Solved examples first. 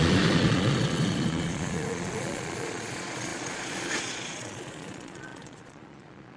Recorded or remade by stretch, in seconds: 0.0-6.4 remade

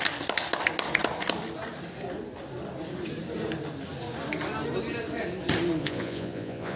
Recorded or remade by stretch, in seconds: 0.0-5.8 recorded; 5.8-6.8 remade